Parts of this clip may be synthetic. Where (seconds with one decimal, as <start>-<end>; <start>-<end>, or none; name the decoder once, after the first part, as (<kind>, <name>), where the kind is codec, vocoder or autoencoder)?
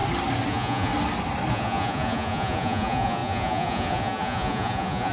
0.5-0.9 (vocoder, Vocos); 1.5-5.1